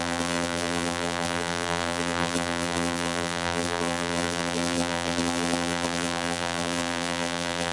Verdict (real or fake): fake